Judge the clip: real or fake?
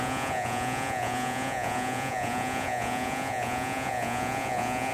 fake